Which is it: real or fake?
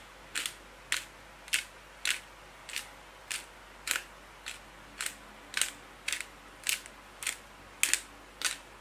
real